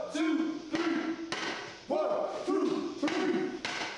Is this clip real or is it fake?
real